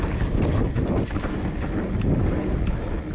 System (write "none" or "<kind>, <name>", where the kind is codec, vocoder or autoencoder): none